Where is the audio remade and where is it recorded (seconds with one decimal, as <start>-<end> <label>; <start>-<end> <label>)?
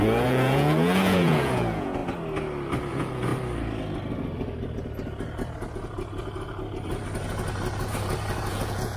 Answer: 0.0-2.0 remade; 2.0-2.9 recorded; 2.9-3.3 remade; 3.3-8.5 recorded; 8.5-9.0 remade